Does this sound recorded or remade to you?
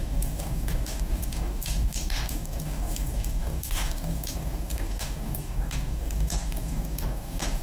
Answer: remade